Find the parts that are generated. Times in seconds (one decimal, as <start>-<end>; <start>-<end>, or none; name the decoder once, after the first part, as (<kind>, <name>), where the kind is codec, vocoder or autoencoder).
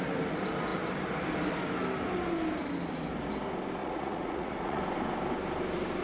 3.8-4.8 (vocoder, Vocos)